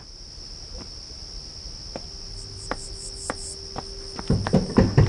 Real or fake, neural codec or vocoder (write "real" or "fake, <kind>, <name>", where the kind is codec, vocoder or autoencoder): real